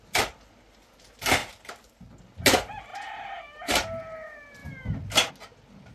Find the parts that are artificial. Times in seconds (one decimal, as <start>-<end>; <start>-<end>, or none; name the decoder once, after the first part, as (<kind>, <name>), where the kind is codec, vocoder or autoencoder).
1.4-2.2 (vocoder, BigVGAN v2); 2.9-4.0